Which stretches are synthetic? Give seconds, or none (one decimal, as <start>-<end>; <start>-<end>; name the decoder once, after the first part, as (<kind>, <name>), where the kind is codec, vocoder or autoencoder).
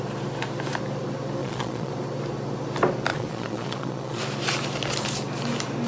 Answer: 1.4-1.9 (vocoder, Vocos); 3.1-4.2